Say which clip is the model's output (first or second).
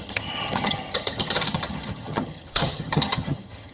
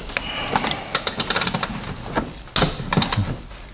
first